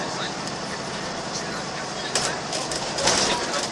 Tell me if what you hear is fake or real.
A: real